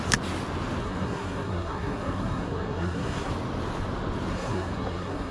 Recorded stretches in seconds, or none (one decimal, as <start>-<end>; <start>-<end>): 0.0-0.8; 3.3-4.3